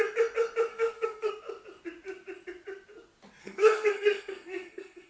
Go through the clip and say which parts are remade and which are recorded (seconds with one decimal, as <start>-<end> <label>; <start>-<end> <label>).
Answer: 0.0-0.7 recorded; 0.7-1.3 remade; 1.3-3.4 recorded; 3.4-5.1 remade